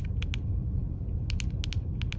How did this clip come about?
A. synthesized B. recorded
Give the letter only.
B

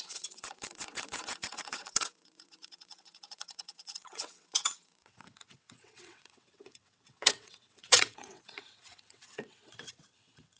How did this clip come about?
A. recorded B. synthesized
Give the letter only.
B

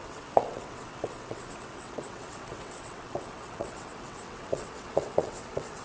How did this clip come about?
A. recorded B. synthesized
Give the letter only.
B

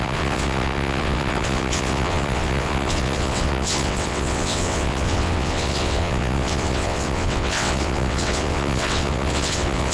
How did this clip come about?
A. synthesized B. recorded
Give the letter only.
A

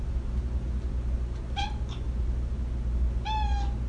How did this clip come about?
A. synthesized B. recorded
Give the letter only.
B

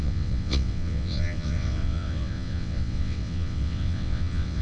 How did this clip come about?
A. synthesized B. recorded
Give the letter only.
A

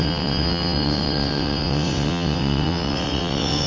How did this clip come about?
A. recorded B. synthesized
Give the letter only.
B